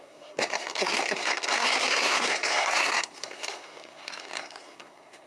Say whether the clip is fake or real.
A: fake